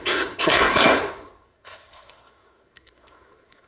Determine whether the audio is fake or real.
fake